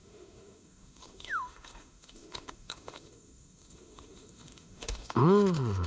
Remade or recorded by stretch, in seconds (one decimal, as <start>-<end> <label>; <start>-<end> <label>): 0.0-5.9 remade